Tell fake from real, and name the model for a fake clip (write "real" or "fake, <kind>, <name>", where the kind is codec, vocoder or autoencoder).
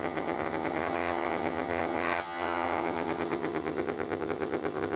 fake, vocoder, HiFi-GAN